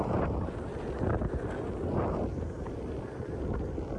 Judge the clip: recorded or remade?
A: recorded